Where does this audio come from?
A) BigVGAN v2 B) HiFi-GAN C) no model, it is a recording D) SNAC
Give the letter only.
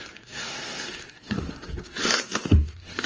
D